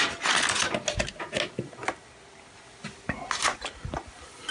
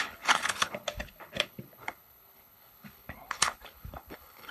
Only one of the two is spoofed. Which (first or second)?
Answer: second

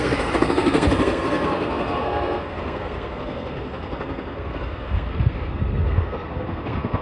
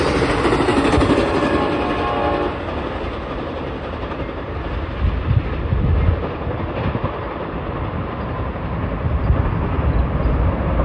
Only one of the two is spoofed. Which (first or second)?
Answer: first